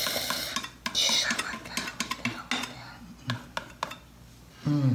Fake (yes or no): no